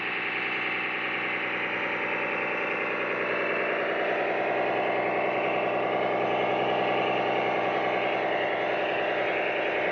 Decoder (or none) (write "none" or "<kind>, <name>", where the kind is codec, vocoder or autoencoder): none